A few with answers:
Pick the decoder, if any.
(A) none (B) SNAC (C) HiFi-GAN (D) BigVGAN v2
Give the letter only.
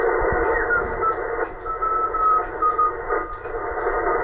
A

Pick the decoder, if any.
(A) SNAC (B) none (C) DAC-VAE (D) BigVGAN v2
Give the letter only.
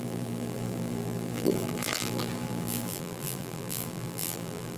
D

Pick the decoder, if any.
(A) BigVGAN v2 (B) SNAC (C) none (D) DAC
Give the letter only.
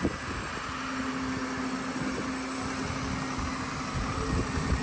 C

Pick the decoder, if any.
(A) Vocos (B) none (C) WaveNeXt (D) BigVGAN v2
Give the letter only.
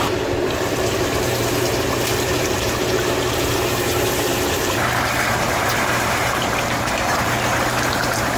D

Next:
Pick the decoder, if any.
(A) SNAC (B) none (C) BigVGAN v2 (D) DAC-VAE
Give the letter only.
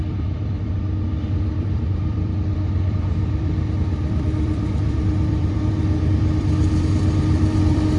C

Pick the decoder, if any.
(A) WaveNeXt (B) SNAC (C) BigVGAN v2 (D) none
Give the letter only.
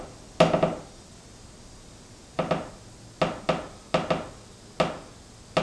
D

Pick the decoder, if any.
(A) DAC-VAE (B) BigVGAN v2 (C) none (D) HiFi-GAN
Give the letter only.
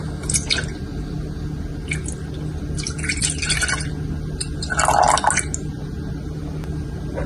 C